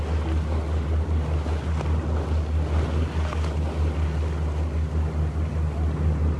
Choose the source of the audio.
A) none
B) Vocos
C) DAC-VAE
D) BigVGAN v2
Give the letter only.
A